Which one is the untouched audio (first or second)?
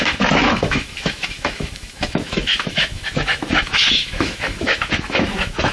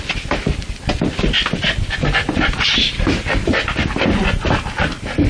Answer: second